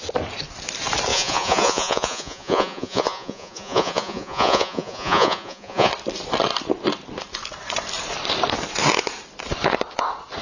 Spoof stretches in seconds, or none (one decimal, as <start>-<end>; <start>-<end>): 1.1-5.9